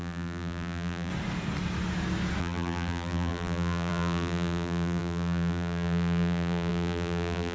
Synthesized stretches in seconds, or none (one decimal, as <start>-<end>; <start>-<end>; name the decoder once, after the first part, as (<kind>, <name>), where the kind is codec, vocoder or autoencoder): 0.0-1.1 (vocoder, BigVGAN v2); 2.4-7.5